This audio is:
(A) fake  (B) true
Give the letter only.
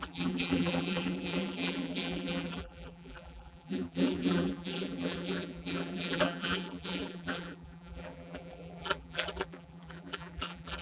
A